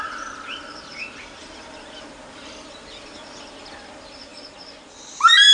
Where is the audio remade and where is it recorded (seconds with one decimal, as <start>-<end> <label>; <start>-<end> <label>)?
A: 0.0-5.5 recorded